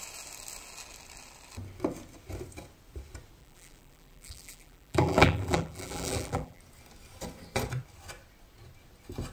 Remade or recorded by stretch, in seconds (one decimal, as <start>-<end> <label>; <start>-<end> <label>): 0.0-3.4 recorded; 3.4-6.6 remade; 6.6-9.3 recorded